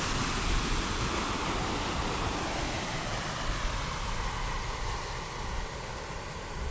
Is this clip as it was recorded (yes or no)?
yes